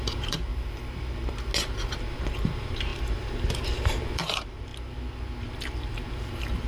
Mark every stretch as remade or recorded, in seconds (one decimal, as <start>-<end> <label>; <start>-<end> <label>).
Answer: 0.0-0.5 remade; 0.5-1.6 recorded; 1.6-4.7 remade; 4.7-5.4 recorded; 5.4-6.7 remade